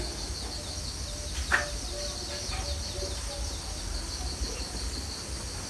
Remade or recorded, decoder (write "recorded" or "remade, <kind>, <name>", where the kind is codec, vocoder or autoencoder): recorded